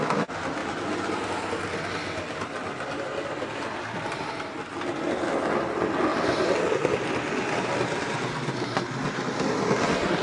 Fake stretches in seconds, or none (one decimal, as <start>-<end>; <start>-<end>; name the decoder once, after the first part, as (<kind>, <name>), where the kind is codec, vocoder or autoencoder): none